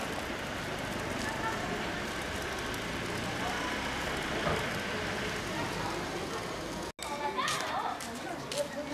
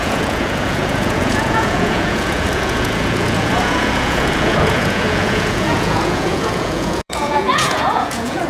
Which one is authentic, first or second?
first